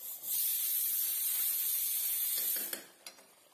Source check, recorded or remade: recorded